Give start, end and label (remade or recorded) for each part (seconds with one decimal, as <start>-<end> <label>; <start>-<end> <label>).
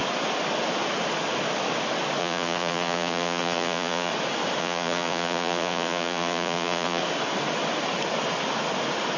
0.0-2.2 recorded; 2.2-4.1 remade; 4.1-4.6 recorded; 4.6-7.0 remade; 7.0-9.2 recorded